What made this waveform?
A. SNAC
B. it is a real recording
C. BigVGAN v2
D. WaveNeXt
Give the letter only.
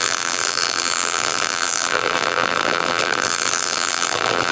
C